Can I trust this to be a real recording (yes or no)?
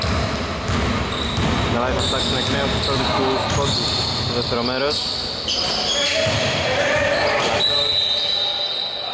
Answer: yes